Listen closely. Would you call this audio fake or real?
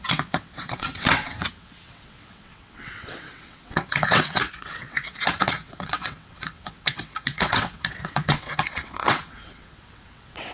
fake